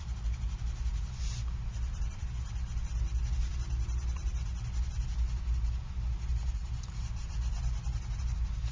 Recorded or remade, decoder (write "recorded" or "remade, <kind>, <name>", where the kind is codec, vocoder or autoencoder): recorded